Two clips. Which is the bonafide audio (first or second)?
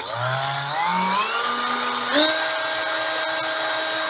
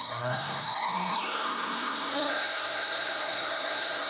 first